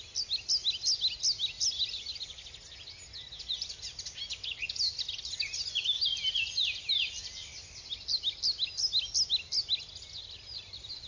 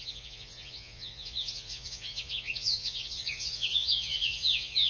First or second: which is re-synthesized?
second